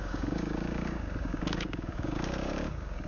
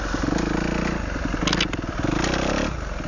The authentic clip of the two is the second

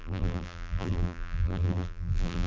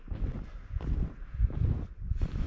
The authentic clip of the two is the second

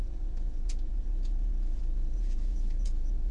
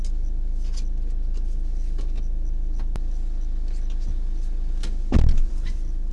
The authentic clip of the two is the second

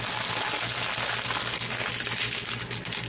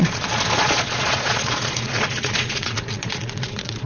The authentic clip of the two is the first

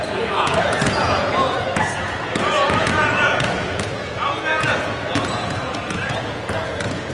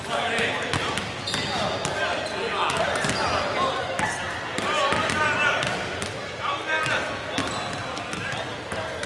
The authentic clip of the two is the second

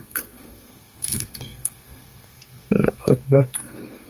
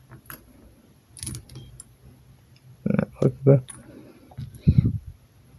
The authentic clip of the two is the second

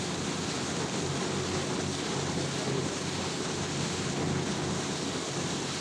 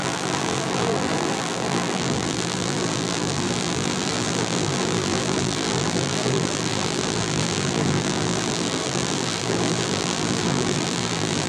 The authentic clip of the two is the first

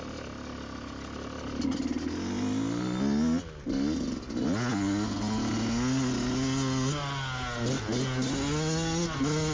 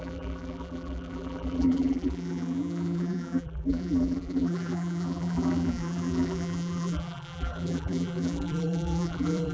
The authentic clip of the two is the first